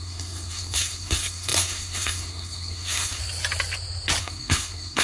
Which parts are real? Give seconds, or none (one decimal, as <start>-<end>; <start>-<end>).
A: 3.2-4.2